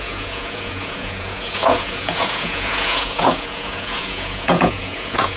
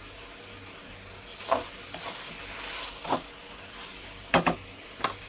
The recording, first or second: second